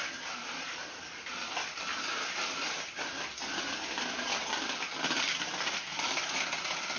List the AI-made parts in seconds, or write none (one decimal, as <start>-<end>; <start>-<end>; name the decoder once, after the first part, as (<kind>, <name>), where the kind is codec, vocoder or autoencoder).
none